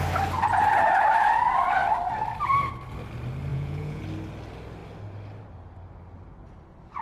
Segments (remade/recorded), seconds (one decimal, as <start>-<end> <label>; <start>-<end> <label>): 0.0-3.5 recorded; 3.5-4.0 remade; 4.0-7.0 recorded